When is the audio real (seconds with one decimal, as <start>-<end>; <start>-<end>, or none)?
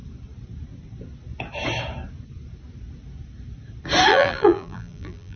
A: 0.0-4.1